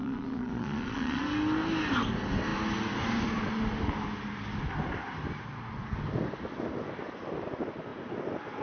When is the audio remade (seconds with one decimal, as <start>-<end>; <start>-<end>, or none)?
0.0-1.2